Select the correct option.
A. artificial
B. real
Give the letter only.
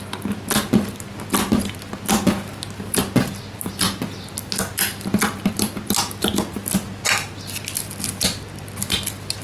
B